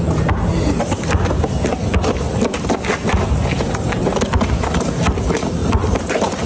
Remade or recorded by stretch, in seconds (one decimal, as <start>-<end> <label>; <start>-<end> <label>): 0.0-1.7 recorded; 1.7-3.2 remade; 3.2-5.6 recorded; 5.6-6.5 remade